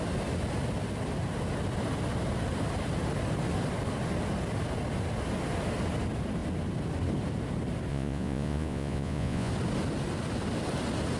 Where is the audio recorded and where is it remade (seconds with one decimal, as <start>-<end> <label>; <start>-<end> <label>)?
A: 0.0-7.9 recorded; 7.9-9.5 remade; 9.5-11.2 recorded